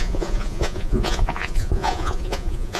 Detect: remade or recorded remade